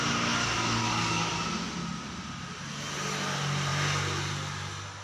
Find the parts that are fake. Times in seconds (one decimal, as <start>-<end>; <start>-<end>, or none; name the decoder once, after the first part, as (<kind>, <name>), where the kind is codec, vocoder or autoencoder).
0.4-1.3 (codec, DAC)